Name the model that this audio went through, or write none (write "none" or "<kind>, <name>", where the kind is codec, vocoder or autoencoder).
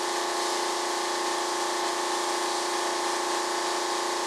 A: none